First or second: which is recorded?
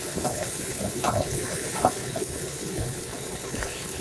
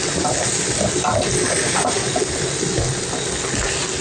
second